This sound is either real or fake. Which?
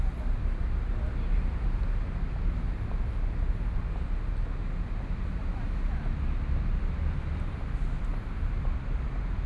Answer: real